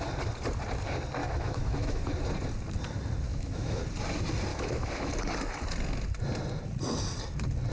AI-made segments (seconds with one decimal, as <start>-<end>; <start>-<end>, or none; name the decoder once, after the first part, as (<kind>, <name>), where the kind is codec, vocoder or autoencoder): 1.2-2.0 (autoencoder, DAC-VAE); 3.3-3.8; 4.5-5.1